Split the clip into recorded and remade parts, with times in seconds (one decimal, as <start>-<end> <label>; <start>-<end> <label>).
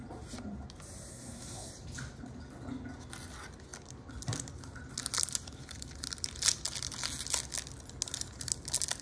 0.0-1.1 recorded; 1.1-1.7 remade; 1.7-9.0 recorded